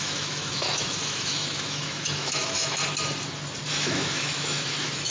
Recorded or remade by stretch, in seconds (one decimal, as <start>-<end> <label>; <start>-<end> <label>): 0.0-2.8 remade; 2.8-3.7 recorded; 3.7-5.1 remade